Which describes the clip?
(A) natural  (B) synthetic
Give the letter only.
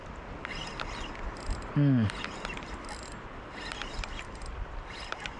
A